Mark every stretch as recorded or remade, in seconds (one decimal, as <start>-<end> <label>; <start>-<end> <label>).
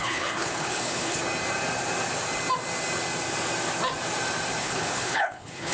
0.0-1.2 remade; 1.2-4.6 recorded; 4.6-5.7 remade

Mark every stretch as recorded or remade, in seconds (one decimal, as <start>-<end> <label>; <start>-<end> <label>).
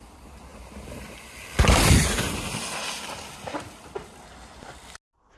0.0-5.4 recorded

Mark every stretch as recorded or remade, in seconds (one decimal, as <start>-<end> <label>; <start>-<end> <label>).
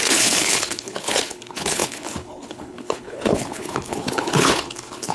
0.0-5.1 remade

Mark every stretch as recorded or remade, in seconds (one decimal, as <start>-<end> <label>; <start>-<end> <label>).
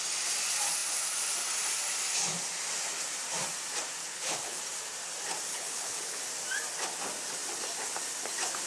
0.0-4.0 recorded; 4.0-4.6 remade; 4.6-5.5 recorded; 5.5-6.2 remade; 6.2-8.7 recorded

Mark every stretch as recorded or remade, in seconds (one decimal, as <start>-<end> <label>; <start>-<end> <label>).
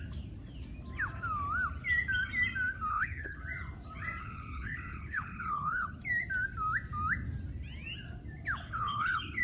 0.0-2.9 recorded; 2.9-3.4 remade; 3.4-4.2 recorded; 4.2-6.0 remade; 6.0-8.6 recorded; 8.6-9.4 remade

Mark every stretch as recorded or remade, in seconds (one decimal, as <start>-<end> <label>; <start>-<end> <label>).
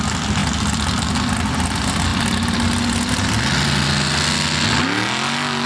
0.0-5.7 recorded